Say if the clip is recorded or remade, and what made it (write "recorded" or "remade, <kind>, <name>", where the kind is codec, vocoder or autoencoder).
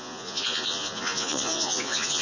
remade, vocoder, Vocos